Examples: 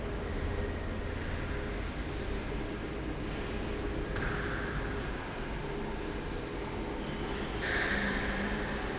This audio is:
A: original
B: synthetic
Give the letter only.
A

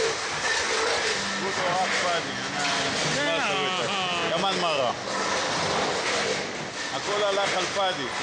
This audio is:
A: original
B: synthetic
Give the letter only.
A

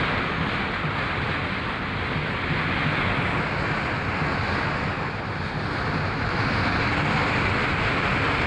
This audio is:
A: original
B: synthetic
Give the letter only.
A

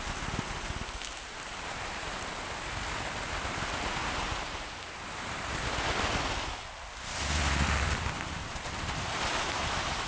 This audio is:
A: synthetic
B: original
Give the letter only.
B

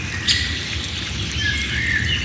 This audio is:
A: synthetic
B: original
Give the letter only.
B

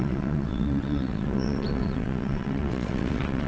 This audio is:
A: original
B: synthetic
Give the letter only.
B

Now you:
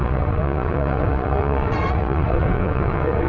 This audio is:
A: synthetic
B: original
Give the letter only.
A